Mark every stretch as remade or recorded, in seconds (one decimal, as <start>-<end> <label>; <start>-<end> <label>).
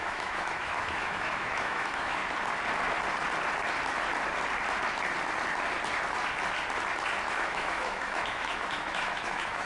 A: 0.0-2.2 remade; 2.2-7.3 recorded; 7.3-9.7 remade